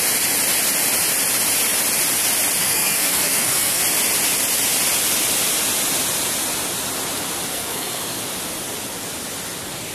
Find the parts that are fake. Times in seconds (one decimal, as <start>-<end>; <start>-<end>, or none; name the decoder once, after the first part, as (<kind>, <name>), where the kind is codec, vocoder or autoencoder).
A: 2.6-3.8 (codec, SNAC); 7.5-8.2

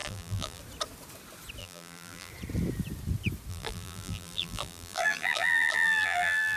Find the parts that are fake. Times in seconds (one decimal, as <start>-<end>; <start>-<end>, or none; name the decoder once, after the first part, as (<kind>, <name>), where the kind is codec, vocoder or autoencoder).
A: 0.0-0.6 (vocoder, BigVGAN v2); 1.6-2.3; 3.5-6.6

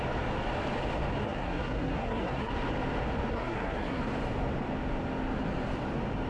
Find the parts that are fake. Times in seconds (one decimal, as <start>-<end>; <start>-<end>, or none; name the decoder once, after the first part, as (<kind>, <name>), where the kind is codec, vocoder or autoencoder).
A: 1.2-2.5 (codec, SNAC); 3.3-4.0

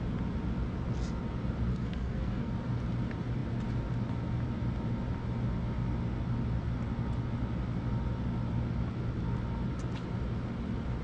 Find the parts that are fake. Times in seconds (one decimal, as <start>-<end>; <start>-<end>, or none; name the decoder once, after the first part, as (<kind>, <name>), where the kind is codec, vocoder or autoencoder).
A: 1.7-2.5 (codec, SNAC)

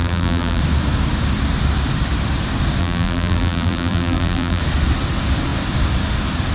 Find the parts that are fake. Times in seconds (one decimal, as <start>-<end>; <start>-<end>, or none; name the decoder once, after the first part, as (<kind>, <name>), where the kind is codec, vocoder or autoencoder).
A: 0.0-0.6 (vocoder, BigVGAN v2); 2.8-4.6

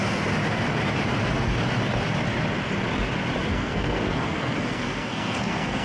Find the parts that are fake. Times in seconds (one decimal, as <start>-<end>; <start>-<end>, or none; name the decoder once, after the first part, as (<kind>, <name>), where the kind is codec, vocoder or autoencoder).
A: 3.5-5.8 (codec, SNAC)

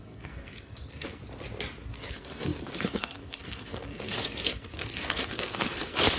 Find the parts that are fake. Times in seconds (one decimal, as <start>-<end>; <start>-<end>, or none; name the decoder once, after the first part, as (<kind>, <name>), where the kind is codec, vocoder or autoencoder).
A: 0.0-1.2 (codec, SNAC); 2.1-6.2